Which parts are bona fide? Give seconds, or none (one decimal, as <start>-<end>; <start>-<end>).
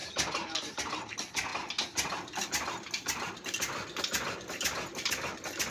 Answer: 0.8-5.7